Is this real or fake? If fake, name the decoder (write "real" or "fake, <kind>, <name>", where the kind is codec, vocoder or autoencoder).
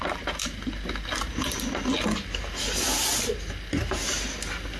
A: real